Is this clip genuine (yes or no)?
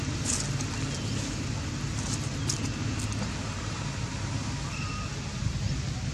yes